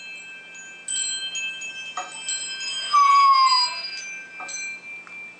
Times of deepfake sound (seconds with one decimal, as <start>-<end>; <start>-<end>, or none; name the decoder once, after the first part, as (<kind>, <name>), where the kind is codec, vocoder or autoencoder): none